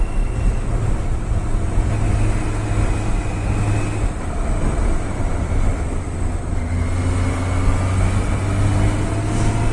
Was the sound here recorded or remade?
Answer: recorded